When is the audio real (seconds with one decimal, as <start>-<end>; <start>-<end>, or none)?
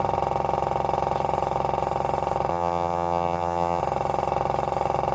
0.0-2.5; 3.8-5.1